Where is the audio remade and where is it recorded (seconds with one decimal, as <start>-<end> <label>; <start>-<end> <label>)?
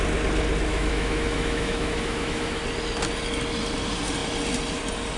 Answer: 0.0-0.7 recorded; 0.7-2.6 remade; 2.6-5.2 recorded